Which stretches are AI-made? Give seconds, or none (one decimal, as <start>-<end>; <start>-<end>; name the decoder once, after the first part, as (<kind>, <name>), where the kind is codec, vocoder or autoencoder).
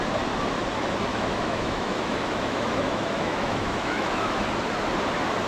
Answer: 1.1-4.4 (autoencoder, DAC-VAE)